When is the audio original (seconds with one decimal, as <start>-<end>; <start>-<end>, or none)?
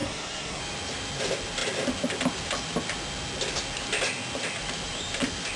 0.6-5.6